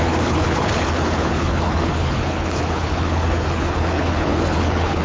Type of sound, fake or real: fake